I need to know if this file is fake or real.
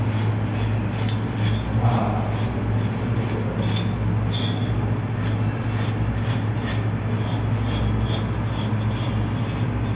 real